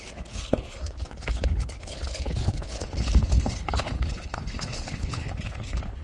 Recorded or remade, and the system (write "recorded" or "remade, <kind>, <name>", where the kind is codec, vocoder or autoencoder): remade, codec, HILCodec